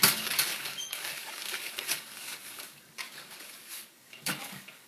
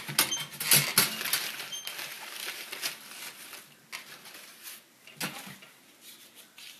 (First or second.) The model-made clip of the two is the first